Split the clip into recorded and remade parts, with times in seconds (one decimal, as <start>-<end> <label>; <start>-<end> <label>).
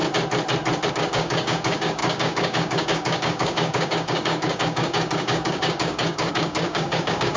0.0-0.9 recorded; 0.9-7.4 remade